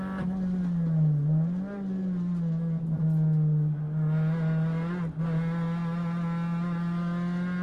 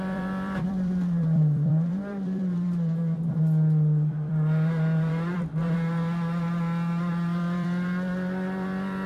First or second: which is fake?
second